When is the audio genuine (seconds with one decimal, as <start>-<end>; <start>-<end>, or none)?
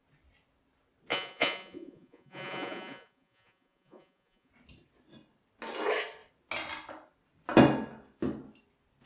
0.0-1.1; 4.5-9.1